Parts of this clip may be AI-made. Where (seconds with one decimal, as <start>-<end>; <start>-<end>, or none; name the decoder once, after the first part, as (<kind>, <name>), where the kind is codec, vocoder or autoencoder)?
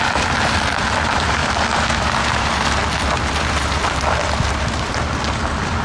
0.0-5.8 (vocoder, BigVGAN v2)